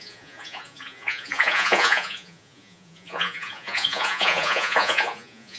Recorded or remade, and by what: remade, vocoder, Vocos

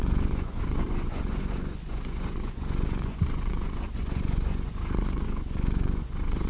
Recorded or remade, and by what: remade, vocoder, Vocos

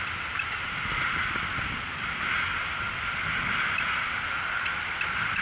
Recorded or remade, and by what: recorded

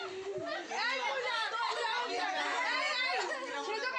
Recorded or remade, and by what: recorded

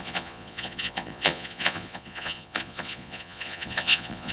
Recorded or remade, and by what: remade, vocoder, Vocos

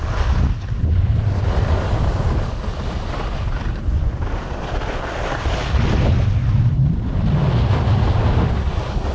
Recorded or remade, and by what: recorded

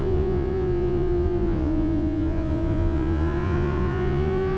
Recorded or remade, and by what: remade, vocoder, Vocos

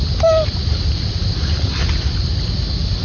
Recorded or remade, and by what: recorded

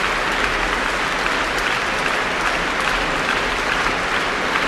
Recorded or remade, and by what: recorded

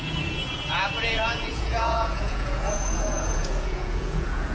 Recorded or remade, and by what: remade, vocoder, Vocos